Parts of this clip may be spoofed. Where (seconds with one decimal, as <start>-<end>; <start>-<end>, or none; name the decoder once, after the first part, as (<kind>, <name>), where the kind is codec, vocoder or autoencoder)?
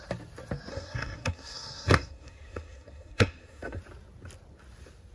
0.7-3.8 (codec, SNAC)